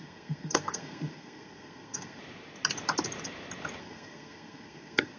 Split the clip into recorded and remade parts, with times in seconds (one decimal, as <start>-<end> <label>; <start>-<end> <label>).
0.0-2.2 remade; 2.2-3.8 recorded; 3.8-5.2 remade